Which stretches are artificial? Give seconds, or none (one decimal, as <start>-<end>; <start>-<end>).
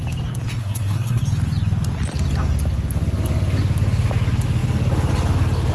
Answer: 0.6-1.2